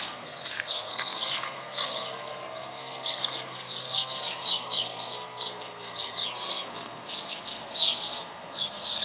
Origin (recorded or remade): remade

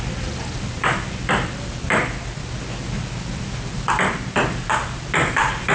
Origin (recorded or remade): recorded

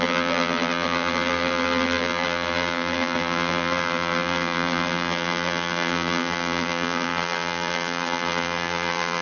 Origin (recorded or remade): remade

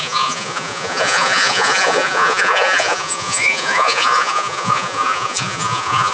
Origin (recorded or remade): remade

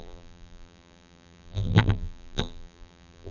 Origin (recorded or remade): remade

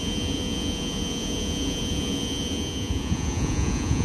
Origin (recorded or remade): remade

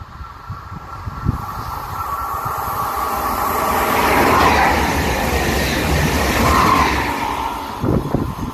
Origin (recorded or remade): recorded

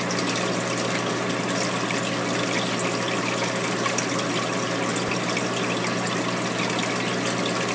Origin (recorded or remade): recorded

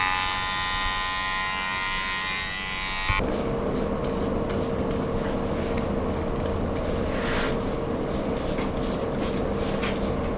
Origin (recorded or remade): recorded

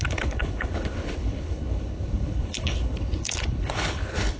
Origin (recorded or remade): remade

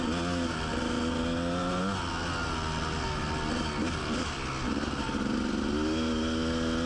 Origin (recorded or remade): recorded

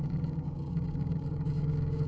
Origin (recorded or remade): remade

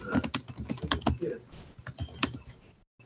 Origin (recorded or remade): recorded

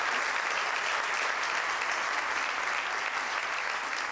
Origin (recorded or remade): recorded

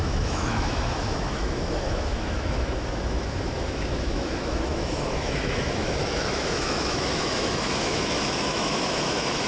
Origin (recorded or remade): remade